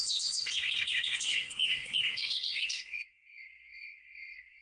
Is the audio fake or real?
fake